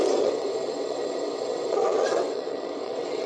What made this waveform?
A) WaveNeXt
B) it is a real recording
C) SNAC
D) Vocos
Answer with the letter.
A